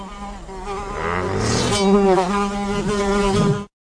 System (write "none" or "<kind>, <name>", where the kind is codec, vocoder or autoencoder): none